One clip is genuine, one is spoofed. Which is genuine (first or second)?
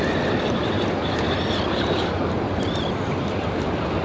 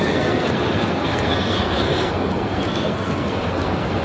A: first